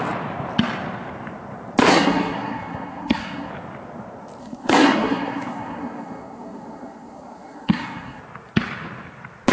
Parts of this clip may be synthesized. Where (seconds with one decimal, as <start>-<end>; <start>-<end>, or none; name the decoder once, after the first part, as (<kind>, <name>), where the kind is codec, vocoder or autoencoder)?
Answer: 1.9-3.5 (codec, SNAC); 4.4-8.2